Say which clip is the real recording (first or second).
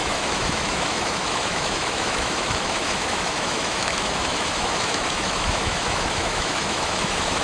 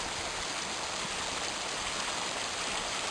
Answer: second